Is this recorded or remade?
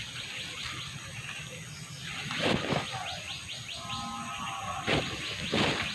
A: recorded